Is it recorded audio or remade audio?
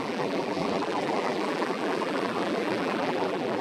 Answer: remade